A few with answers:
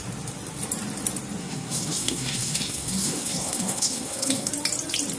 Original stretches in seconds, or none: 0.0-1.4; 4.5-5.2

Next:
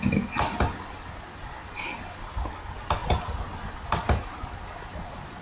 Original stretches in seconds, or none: 0.0-5.4

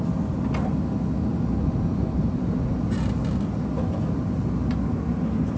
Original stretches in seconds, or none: 0.0-5.6